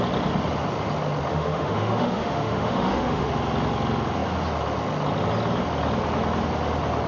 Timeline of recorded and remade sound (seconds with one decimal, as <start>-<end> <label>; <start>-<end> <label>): 0.0-1.3 recorded; 1.3-3.3 remade; 3.3-7.1 recorded